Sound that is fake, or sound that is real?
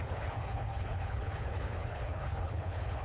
fake